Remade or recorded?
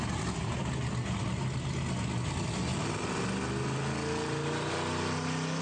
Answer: recorded